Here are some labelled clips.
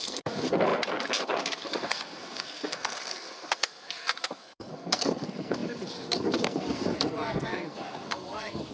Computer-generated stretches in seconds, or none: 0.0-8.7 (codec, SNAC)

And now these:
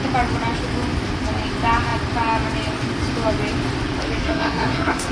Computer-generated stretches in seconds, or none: 4.2-5.1 (codec, SNAC)

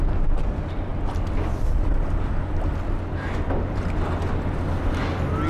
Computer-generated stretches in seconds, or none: none

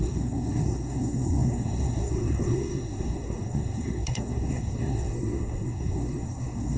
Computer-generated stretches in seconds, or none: 0.0-6.8 (codec, SNAC)

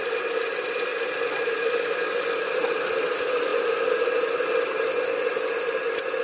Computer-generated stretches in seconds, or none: none

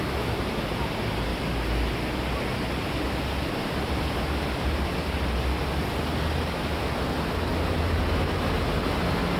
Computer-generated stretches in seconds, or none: none

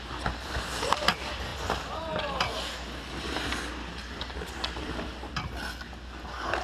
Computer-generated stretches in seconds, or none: none